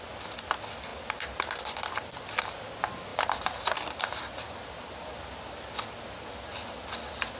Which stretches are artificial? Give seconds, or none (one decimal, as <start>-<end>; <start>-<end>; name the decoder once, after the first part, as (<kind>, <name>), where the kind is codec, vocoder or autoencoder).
none